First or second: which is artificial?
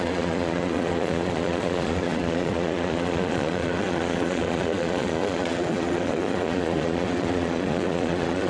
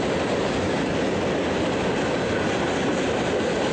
first